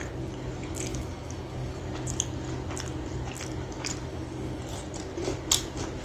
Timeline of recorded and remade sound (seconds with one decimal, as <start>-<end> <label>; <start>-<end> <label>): 0.0-0.9 recorded; 0.9-1.8 remade; 1.8-4.1 recorded; 4.1-4.6 remade; 4.6-6.0 recorded

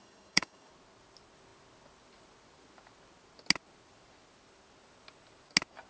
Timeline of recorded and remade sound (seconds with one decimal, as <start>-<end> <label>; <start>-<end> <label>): 0.0-0.7 remade; 0.7-5.9 recorded

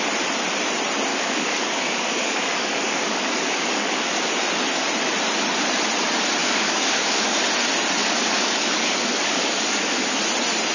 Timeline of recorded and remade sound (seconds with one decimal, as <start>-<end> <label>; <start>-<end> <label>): 0.0-1.1 recorded; 1.1-4.3 remade; 4.3-6.4 recorded; 6.4-7.4 remade; 7.4-8.0 recorded; 8.0-10.2 remade; 10.2-10.7 recorded

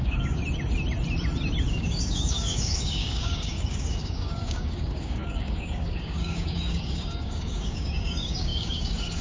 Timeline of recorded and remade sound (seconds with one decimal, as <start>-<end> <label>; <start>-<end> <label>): 0.0-0.4 remade; 0.4-1.7 recorded; 1.7-9.2 remade